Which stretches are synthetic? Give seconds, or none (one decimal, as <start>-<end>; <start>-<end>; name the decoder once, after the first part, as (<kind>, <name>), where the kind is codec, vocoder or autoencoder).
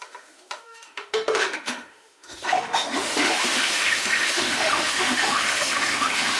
0.0-6.4 (autoencoder, DAC-VAE)